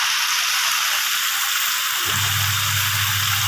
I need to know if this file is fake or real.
real